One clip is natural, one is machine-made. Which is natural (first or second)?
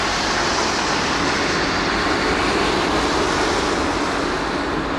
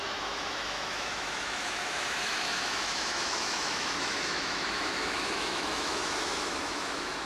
first